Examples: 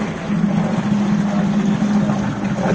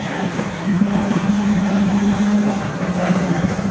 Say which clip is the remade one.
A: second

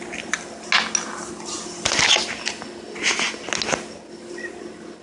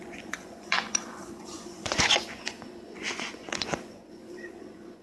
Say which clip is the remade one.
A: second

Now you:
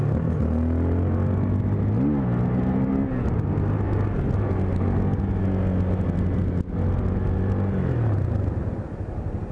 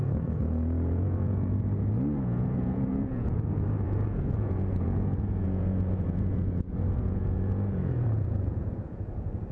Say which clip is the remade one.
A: second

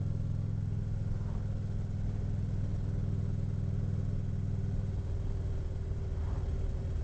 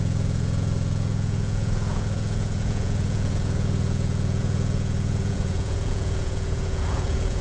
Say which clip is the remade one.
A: second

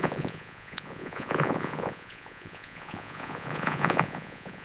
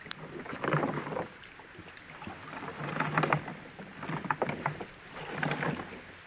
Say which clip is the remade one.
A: first